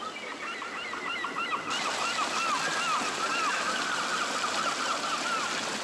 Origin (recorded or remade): recorded